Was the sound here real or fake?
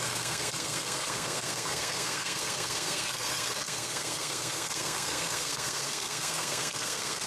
fake